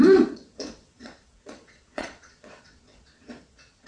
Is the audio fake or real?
fake